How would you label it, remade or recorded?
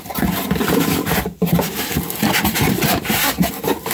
recorded